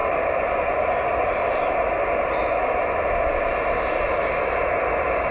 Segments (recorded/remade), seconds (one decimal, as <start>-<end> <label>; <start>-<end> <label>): 0.0-5.3 recorded